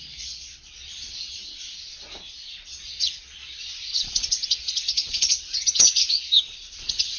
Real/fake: fake